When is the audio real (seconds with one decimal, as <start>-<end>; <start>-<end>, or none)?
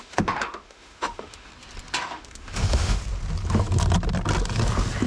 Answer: 1.5-2.0; 3.0-5.1